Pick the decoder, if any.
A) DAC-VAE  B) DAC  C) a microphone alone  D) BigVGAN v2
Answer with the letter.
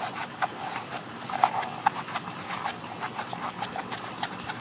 C